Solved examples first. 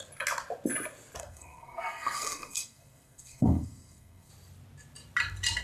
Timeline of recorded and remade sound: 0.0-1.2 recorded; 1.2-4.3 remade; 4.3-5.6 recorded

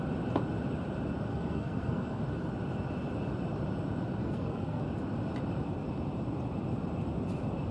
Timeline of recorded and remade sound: 0.0-1.3 recorded; 1.3-2.2 remade; 2.2-4.2 recorded; 4.2-4.8 remade; 4.8-7.7 recorded

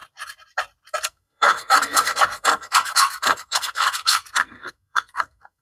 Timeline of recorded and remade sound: 0.0-1.0 recorded; 1.0-5.6 remade

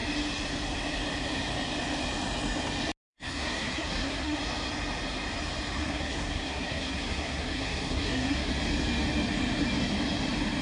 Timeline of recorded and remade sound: 0.0-3.1 recorded; 3.1-4.4 remade; 4.4-5.8 recorded; 5.8-8.5 remade; 8.5-10.6 recorded

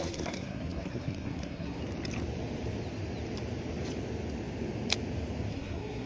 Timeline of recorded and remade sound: 0.0-1.8 remade; 1.8-5.5 recorded; 5.5-6.1 remade

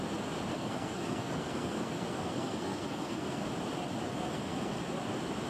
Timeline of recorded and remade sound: 0.0-0.5 recorded; 0.5-3.5 remade; 3.5-4.1 recorded; 4.1-4.8 remade; 4.8-5.5 recorded

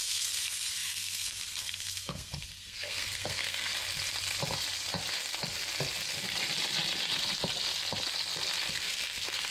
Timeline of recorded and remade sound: 0.0-3.7 remade; 3.7-8.7 recorded; 8.7-9.5 remade

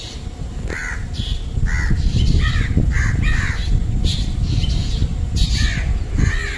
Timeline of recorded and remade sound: 0.0-6.6 recorded